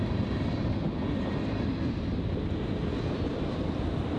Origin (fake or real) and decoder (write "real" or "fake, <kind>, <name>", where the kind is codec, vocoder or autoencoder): real